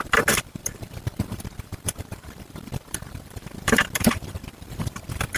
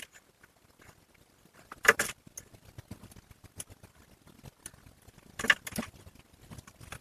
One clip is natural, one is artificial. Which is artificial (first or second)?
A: first